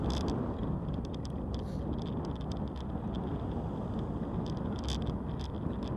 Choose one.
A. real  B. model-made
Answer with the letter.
A